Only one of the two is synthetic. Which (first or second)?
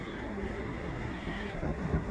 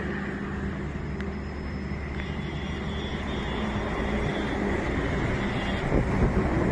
first